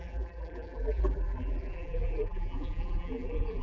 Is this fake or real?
fake